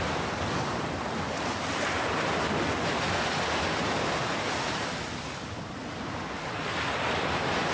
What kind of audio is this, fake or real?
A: real